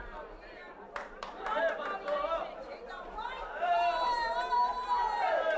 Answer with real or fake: fake